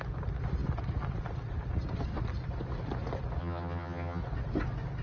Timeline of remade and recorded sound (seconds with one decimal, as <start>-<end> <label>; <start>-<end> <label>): 0.0-3.4 recorded; 3.4-4.2 remade; 4.2-5.0 recorded